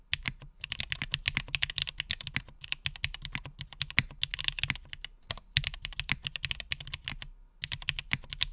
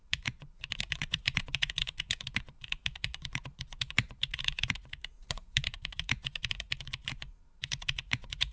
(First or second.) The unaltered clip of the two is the first